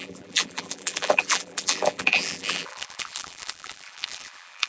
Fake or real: fake